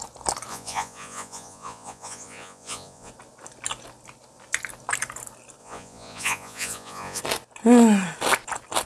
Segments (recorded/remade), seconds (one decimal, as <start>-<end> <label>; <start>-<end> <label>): 0.0-0.5 recorded; 0.5-3.1 remade; 3.1-5.6 recorded; 5.6-7.2 remade; 7.2-8.9 recorded